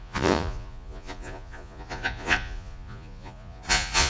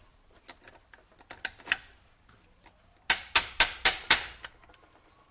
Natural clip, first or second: second